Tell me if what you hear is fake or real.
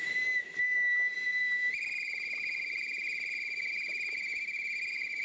real